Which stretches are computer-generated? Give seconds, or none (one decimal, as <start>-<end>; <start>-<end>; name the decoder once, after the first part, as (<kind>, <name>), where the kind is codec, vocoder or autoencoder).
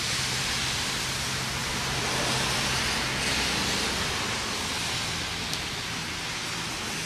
1.6-2.8 (vocoder, BigVGAN v2)